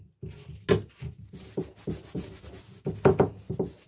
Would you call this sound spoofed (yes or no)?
no